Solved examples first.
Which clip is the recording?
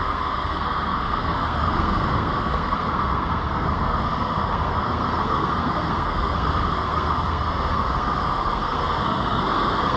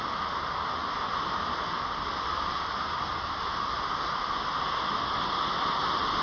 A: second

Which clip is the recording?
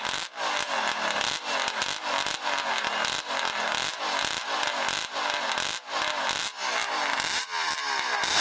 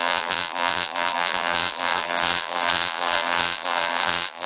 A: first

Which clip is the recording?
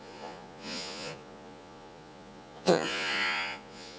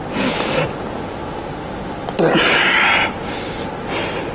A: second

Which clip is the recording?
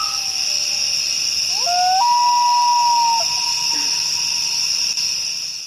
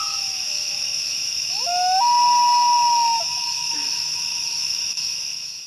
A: first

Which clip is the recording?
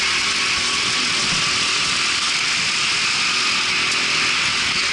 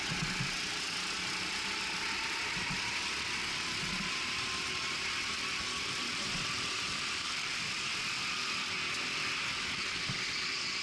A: first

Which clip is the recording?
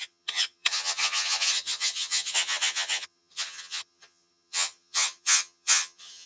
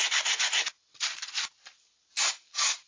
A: second